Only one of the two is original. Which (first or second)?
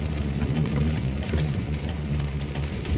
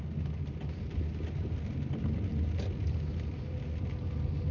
second